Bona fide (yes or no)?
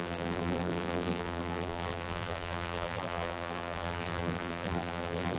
no